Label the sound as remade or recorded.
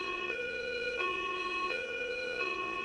remade